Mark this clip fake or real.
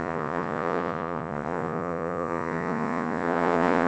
fake